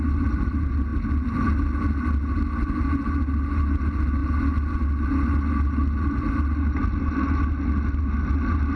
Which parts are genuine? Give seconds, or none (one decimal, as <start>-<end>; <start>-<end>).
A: 0.0-8.8

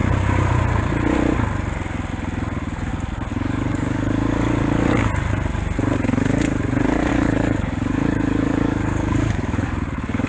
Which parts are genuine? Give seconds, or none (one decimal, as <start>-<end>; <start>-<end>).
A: 0.0-3.3; 4.9-7.1

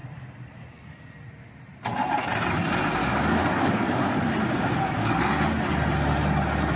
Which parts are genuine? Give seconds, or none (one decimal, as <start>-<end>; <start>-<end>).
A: 0.0-3.0; 4.3-6.8